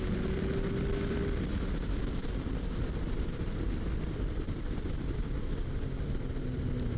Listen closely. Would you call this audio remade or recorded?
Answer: remade